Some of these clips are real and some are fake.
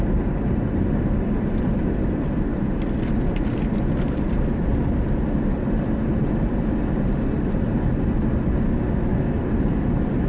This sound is real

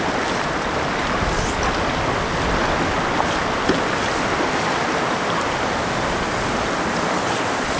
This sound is real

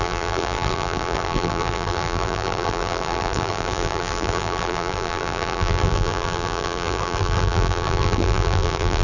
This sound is fake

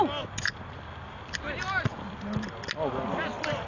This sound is real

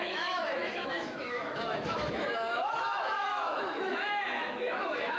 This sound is fake